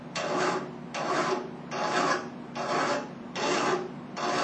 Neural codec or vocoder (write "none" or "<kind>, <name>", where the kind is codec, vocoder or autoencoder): none